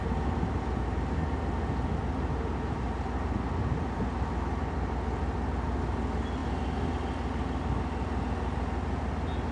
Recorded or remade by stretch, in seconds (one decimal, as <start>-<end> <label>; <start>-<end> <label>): 0.0-9.5 recorded